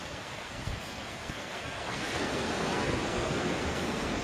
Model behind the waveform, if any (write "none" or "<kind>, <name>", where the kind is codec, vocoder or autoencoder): codec, SNAC